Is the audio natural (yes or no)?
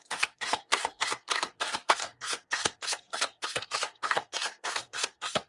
no